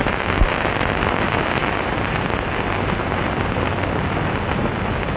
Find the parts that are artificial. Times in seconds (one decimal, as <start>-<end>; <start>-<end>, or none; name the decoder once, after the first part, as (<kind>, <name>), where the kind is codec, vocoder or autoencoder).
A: none